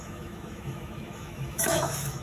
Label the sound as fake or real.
fake